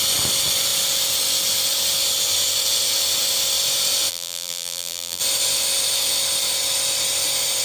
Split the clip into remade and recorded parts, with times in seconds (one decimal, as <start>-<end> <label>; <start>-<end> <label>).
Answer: 0.0-4.1 recorded; 4.1-5.2 remade; 5.2-7.6 recorded